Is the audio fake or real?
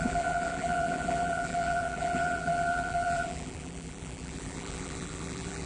fake